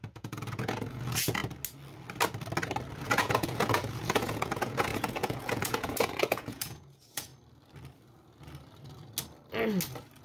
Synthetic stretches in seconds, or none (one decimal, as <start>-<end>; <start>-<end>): 0.0-1.4; 3.0-7.3